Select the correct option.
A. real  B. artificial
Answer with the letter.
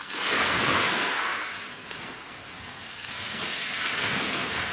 B